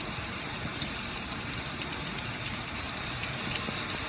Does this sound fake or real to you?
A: real